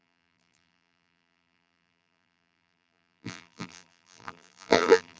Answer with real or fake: fake